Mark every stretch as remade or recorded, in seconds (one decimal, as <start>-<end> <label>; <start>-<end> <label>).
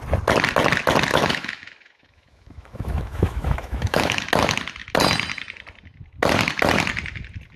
0.0-1.1 recorded; 1.1-4.3 remade; 4.3-7.6 recorded